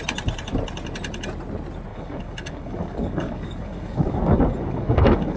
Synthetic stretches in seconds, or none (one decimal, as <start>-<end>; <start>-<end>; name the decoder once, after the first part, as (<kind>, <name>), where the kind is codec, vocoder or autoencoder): 1.9-5.4 (codec, DAC)